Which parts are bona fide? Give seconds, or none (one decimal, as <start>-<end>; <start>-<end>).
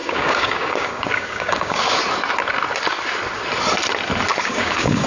2.0-4.4